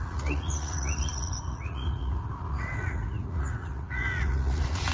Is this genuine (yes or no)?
no